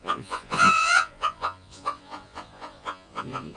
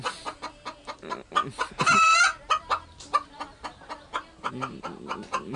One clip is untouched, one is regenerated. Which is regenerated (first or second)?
first